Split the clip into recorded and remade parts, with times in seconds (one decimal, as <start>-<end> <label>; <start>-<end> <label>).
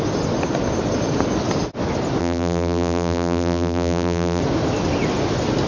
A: 0.0-2.2 recorded; 2.2-4.4 remade; 4.4-5.7 recorded